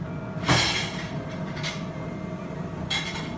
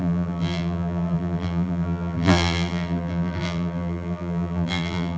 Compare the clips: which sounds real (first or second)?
first